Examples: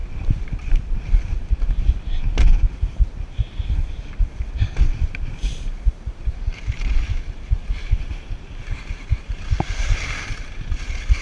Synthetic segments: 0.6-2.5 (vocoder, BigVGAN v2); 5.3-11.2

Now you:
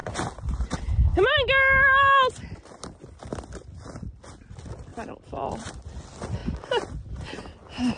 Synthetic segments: 0.0-0.8 (vocoder, BigVGAN v2); 4.9-5.7; 6.4-7.4

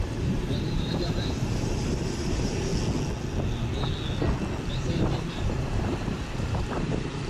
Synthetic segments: 0.0-2.7 (vocoder, BigVGAN v2); 4.7-7.3

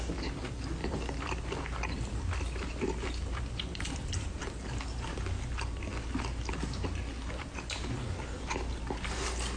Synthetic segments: 0.8-4.4 (vocoder, BigVGAN v2)